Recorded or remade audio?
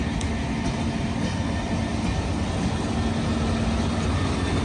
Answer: recorded